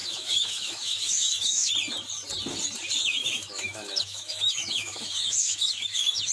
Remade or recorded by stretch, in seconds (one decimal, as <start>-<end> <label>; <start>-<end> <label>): 0.0-1.7 remade; 1.7-3.0 recorded; 3.0-6.3 remade